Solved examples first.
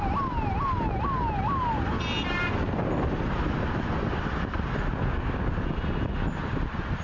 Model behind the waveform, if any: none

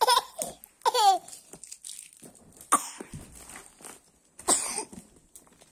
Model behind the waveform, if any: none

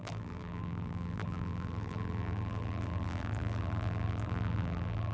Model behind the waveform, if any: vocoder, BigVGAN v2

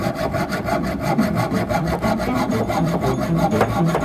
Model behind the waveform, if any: vocoder, BigVGAN v2